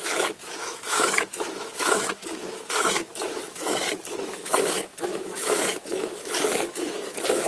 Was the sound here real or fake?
fake